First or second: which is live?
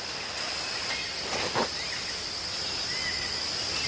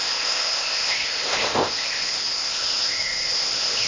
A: first